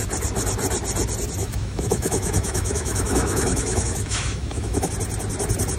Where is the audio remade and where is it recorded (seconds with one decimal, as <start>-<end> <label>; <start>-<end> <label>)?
0.0-1.4 recorded; 1.4-4.9 remade; 4.9-5.8 recorded